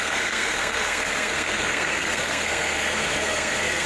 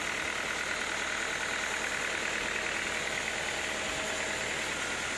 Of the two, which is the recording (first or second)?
second